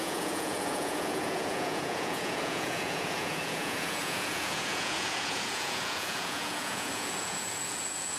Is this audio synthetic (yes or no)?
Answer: yes